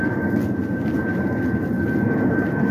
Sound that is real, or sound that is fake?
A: real